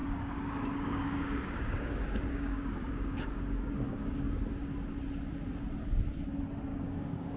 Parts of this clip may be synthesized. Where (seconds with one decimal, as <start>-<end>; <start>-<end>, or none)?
0.0-4.4; 6.7-7.4